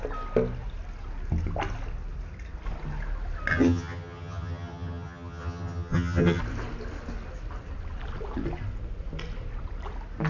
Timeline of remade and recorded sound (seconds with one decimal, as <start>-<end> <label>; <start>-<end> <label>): 0.0-3.5 recorded; 3.5-6.4 remade; 6.4-10.3 recorded